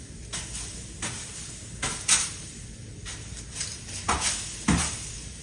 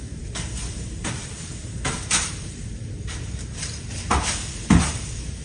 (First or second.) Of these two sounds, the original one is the first